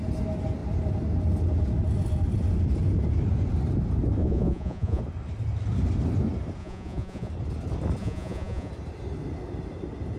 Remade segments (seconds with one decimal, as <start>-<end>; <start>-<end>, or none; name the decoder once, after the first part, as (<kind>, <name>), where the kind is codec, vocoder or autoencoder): 4.2-5.0 (vocoder, Vocos); 6.6-7.3; 8.0-8.7